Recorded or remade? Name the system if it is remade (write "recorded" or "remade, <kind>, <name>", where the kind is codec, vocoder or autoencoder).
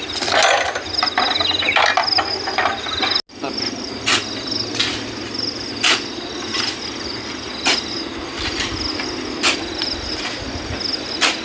recorded